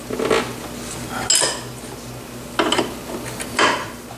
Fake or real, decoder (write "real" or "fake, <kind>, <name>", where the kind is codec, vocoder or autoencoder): real